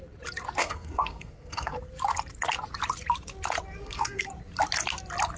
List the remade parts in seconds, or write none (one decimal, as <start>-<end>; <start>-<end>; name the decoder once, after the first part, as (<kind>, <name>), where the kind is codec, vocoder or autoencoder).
0.6-1.8 (codec, SNAC); 3.8-4.3